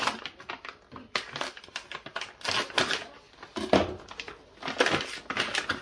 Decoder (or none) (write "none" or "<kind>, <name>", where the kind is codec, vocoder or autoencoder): none